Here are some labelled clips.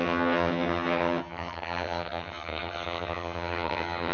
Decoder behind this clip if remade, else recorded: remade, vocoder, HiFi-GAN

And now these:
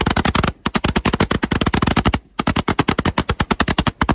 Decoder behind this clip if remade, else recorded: recorded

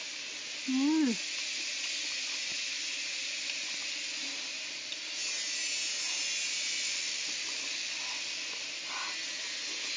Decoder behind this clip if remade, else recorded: recorded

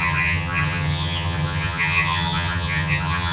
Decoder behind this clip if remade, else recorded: remade, vocoder, HiFi-GAN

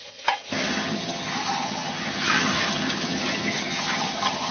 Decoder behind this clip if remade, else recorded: remade, vocoder, HiFi-GAN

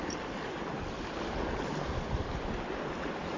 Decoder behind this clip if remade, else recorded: recorded